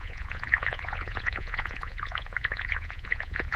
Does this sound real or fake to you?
fake